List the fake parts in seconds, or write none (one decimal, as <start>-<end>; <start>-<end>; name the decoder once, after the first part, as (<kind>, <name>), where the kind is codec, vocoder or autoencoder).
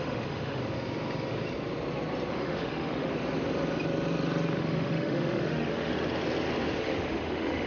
0.0-0.6 (autoencoder, DAC-VAE); 2.3-3.1; 4.6-5.9; 6.8-7.7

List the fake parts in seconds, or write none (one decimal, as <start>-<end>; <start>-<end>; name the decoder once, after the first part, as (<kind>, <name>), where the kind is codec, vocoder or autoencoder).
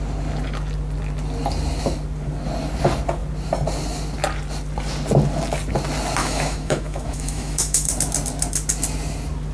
6.2-7.9 (autoencoder, DAC-VAE)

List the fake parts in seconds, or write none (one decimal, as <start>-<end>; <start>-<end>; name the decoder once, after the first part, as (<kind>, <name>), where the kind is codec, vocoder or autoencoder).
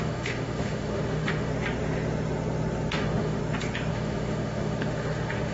0.0-1.5 (autoencoder, DAC-VAE); 2.9-3.4; 3.9-5.5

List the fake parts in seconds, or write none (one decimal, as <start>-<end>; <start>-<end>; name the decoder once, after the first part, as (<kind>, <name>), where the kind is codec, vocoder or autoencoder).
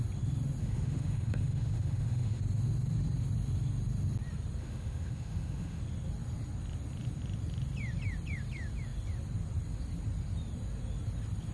0.6-2.4 (autoencoder, DAC-VAE); 4.6-5.8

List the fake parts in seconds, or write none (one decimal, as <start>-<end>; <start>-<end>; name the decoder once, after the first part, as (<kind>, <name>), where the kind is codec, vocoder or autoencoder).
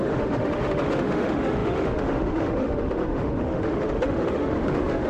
0.0-5.1 (autoencoder, DAC-VAE)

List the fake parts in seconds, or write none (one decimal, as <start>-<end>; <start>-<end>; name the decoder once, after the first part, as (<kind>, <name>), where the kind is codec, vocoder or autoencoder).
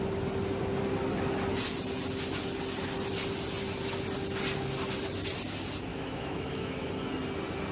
5.9-6.9 (autoencoder, DAC-VAE)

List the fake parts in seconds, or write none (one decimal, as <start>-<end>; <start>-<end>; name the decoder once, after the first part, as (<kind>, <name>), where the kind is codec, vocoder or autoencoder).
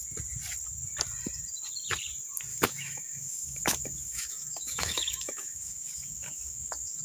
2.5-7.0 (autoencoder, DAC-VAE)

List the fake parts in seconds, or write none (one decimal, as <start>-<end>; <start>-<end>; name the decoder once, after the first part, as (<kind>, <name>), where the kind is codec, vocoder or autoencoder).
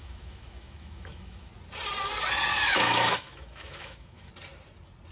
0.0-1.5 (autoencoder, DAC-VAE); 2.5-4.3